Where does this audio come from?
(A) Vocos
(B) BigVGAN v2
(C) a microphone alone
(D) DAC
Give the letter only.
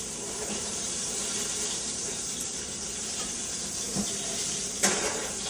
B